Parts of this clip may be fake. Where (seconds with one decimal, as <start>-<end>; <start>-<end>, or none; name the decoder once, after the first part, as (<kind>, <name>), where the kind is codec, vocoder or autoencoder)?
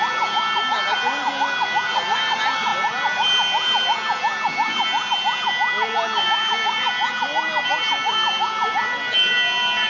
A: none